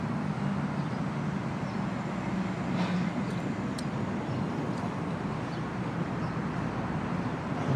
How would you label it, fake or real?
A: real